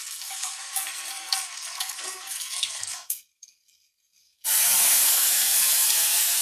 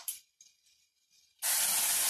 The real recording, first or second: second